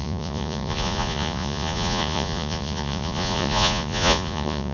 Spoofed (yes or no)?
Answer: yes